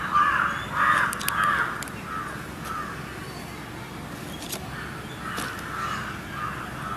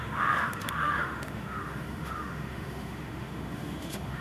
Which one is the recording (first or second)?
first